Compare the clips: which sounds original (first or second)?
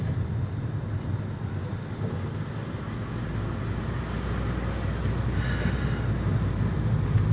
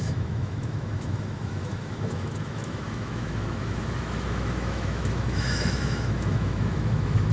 first